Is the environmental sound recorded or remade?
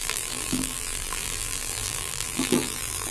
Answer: remade